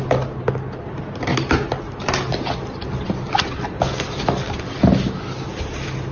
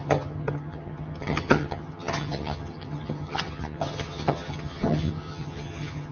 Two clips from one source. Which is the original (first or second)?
first